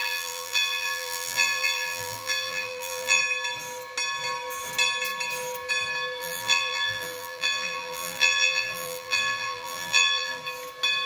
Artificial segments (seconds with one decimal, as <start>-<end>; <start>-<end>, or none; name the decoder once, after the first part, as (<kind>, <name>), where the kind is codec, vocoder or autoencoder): 0.0-3.2 (vocoder, BigVGAN v2); 6.2-10.4